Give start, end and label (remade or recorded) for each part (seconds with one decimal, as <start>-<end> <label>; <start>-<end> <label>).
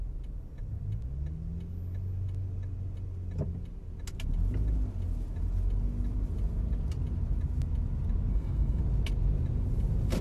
0.0-8.3 recorded; 8.3-8.8 remade; 8.8-10.2 recorded